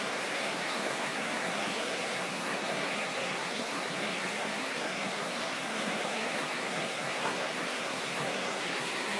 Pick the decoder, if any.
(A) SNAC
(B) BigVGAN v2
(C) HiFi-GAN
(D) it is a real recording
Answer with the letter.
A